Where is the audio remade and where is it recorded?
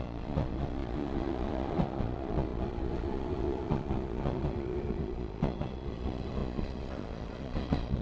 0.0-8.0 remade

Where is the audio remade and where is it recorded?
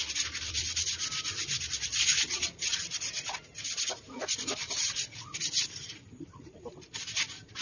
0.0-7.6 recorded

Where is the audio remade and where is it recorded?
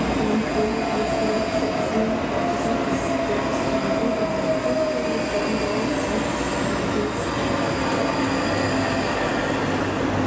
0.0-0.5 recorded; 0.5-1.9 remade; 1.9-10.3 recorded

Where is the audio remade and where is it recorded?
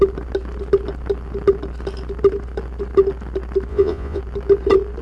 0.0-3.7 recorded; 3.7-4.2 remade; 4.2-5.0 recorded